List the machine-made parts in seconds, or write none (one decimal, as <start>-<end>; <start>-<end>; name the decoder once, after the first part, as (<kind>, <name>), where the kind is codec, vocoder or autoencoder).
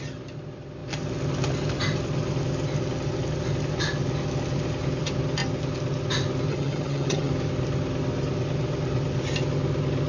6.5-7.3 (vocoder, HiFi-GAN)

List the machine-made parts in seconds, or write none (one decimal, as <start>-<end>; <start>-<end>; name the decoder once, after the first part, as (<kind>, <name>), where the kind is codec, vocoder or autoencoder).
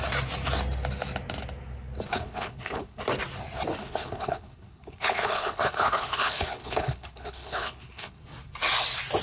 2.1-3.0 (codec, HILCodec); 3.8-8.2